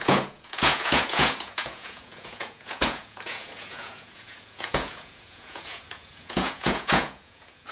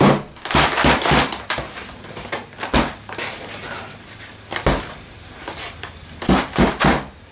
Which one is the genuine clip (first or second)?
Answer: second